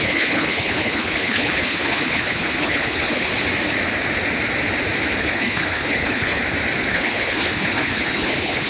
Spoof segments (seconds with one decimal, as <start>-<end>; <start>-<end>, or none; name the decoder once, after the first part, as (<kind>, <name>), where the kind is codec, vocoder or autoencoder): 0.0-3.3 (codec, HILCodec); 5.2-6.4; 6.9-8.7